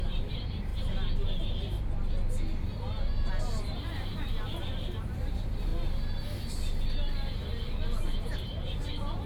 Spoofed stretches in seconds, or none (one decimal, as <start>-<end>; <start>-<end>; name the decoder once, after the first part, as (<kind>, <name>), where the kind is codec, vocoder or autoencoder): 0.0-0.7 (vocoder, BigVGAN v2); 3.9-5.7; 8.2-9.3